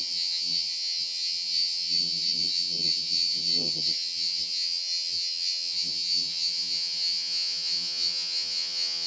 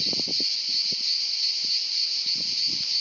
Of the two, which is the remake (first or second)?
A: first